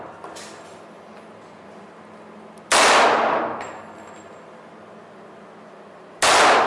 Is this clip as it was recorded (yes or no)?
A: yes